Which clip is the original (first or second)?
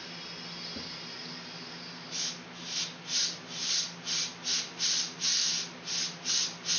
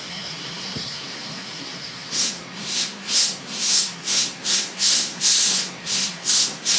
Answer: first